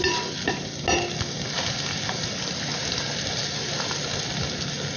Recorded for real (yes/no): yes